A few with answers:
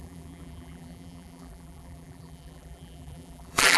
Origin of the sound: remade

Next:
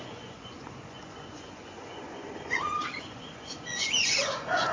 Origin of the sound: remade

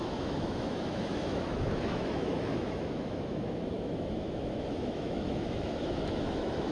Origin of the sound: remade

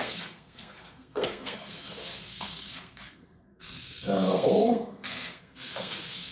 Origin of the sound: remade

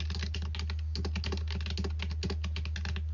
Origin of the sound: recorded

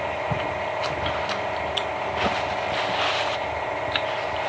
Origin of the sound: recorded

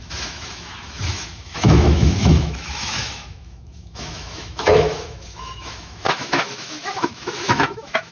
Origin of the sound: remade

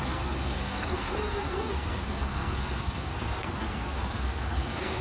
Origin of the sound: remade